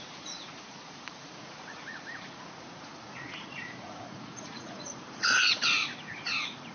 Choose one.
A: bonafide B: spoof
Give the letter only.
B